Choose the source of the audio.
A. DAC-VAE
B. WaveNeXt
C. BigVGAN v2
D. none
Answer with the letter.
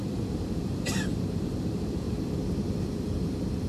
C